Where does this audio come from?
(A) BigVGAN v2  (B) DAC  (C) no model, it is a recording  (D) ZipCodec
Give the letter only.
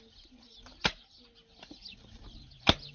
C